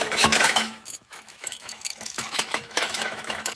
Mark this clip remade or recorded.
remade